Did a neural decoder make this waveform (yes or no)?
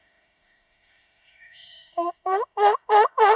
yes